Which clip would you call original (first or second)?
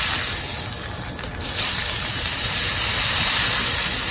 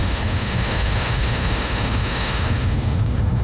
first